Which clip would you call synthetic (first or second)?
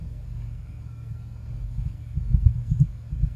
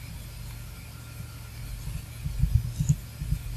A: first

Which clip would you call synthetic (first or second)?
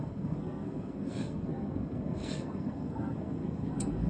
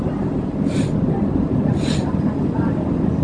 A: first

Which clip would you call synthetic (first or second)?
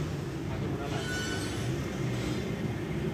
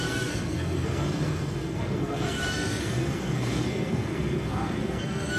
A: second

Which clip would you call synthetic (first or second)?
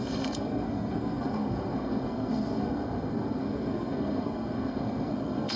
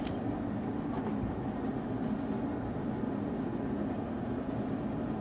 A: first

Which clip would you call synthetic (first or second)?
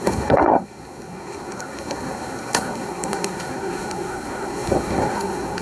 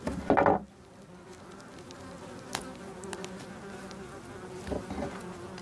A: first